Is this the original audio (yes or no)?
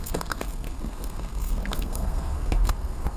no